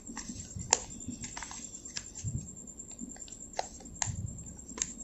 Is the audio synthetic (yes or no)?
no